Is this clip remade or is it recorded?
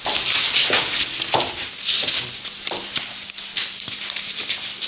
recorded